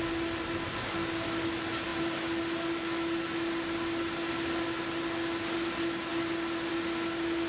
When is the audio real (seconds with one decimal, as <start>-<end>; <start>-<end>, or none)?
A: 0.0-7.5